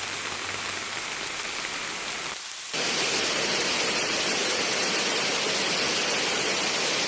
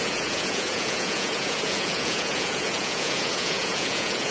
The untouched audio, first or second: first